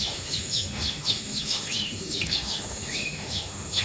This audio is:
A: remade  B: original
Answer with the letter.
A